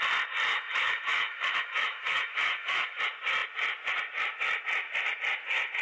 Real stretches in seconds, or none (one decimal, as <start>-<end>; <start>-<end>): 0.0-0.5; 3.0-5.8

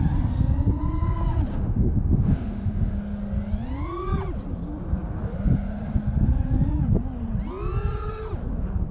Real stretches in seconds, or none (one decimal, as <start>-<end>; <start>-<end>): 0.0-1.5; 3.0-8.9

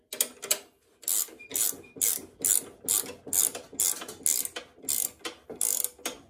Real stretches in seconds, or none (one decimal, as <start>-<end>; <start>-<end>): 0.0-6.3

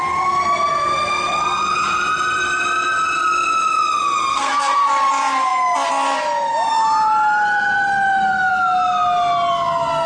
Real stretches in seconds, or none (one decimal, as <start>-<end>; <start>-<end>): 0.0-4.3; 4.9-10.1

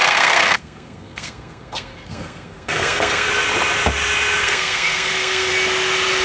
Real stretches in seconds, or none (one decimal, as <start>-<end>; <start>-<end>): 3.3-4.4; 5.5-6.2

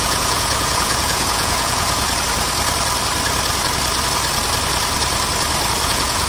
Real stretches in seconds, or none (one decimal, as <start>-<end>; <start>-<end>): 2.0-5.8

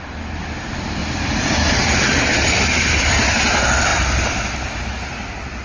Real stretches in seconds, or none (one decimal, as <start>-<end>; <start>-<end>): 0.0-1.0; 2.2-3.9; 4.8-5.6

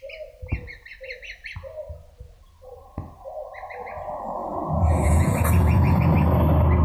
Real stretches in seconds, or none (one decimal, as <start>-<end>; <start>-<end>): 0.0-4.4; 6.0-6.8